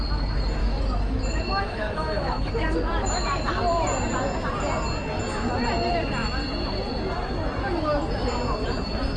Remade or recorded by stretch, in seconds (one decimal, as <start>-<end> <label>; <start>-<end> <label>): 0.0-0.6 recorded; 0.6-2.5 remade; 2.5-9.2 recorded